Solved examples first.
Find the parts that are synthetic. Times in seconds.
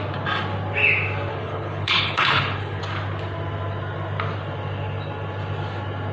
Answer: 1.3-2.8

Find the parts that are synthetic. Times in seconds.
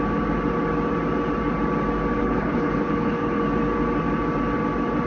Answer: 2.2-3.4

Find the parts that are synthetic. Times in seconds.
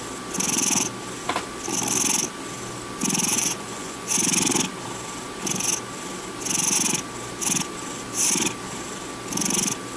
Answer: 3.3-4.1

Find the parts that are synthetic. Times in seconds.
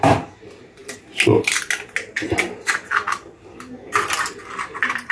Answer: 0.0-0.8; 3.9-5.1